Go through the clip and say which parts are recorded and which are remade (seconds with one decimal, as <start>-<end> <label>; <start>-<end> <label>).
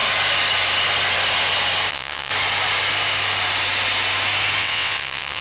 0.0-1.9 recorded; 1.9-2.3 remade; 2.3-4.6 recorded; 4.6-5.4 remade